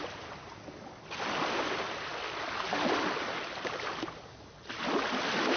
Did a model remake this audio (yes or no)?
no